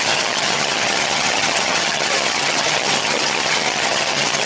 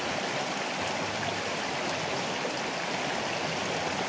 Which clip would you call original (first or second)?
second